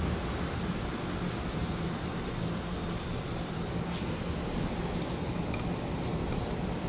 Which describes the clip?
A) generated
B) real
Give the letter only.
B